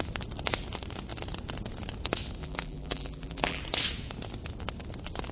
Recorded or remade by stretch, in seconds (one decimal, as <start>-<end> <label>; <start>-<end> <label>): 0.0-2.4 recorded; 2.4-3.6 remade; 3.6-5.3 recorded